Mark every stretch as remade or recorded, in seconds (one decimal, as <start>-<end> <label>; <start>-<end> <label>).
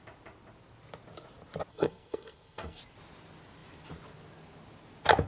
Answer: 0.0-1.7 recorded; 1.7-2.8 remade; 2.8-5.3 recorded